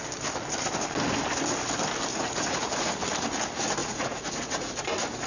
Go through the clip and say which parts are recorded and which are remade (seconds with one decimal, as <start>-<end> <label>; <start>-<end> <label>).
0.0-2.1 recorded; 2.1-2.9 remade; 2.9-3.8 recorded; 3.8-4.7 remade; 4.7-5.3 recorded